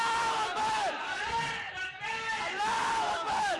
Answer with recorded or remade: remade